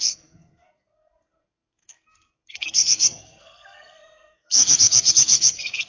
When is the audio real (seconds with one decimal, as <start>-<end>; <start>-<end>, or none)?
none